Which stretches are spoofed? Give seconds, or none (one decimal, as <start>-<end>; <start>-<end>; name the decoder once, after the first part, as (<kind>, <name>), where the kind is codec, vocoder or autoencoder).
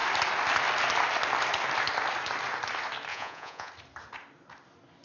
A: 3.1-3.7 (vocoder, Vocos)